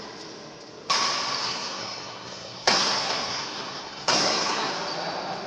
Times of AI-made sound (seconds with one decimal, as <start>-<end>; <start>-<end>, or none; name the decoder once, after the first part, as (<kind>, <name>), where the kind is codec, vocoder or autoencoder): 1.4-4.7 (codec, SNAC)